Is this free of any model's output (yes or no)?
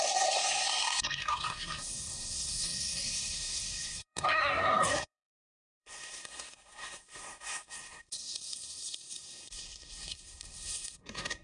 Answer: no